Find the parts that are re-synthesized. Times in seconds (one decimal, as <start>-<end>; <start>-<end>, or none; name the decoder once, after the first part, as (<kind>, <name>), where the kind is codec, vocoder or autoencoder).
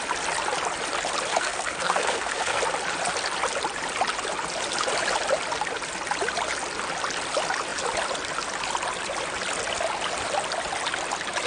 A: 1.3-2.6 (codec, SNAC)